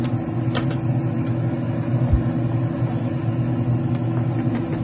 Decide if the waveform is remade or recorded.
recorded